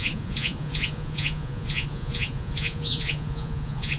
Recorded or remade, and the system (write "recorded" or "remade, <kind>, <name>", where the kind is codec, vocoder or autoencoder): remade, vocoder, Vocos